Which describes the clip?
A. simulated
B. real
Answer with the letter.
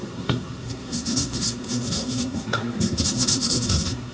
A